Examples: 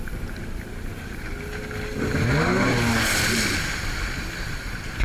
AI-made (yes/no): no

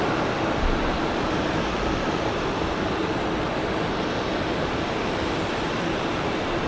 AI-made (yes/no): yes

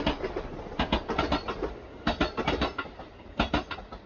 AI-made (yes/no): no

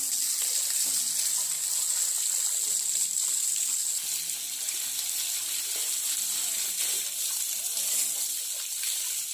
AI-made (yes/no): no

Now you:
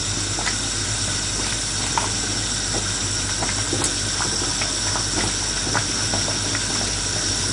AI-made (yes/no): no